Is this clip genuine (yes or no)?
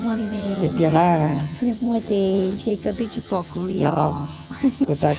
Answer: no